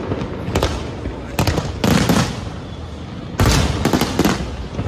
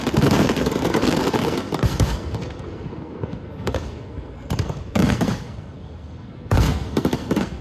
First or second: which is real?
first